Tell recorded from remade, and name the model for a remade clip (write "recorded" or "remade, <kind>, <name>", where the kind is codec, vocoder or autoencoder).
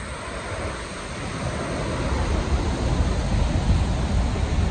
recorded